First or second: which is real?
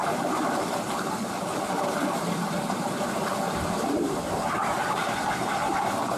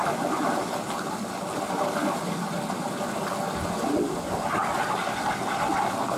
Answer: second